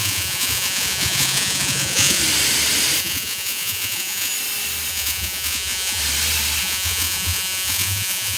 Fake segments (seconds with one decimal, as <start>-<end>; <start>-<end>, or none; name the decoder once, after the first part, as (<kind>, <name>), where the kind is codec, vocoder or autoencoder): 0.0-2.2 (vocoder, Vocos); 3.0-4.3; 4.9-6.0; 6.6-8.4